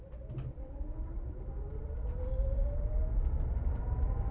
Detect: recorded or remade recorded